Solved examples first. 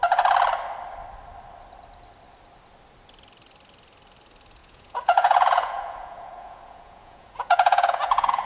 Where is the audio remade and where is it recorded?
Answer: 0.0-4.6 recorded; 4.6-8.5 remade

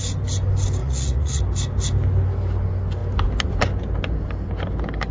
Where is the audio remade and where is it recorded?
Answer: 0.0-0.8 recorded; 0.8-1.4 remade; 1.4-5.1 recorded

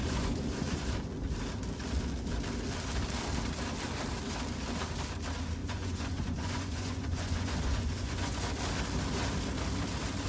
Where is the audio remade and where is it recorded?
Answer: 0.0-0.8 remade; 0.8-5.6 recorded; 5.6-8.5 remade; 8.5-10.3 recorded

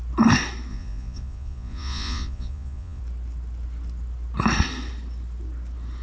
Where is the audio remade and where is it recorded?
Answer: 0.0-0.7 recorded; 0.7-3.0 remade; 3.0-6.0 recorded

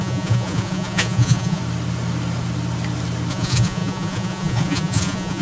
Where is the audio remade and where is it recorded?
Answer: 0.0-1.6 remade; 1.6-3.3 recorded; 3.3-5.4 remade

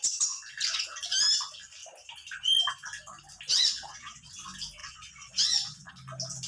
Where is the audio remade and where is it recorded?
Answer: 0.0-3.5 recorded; 3.5-4.3 remade; 4.3-4.8 recorded; 4.8-5.9 remade; 5.9-6.5 recorded

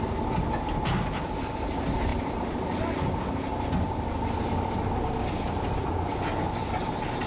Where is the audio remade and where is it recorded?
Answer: 0.0-7.3 recorded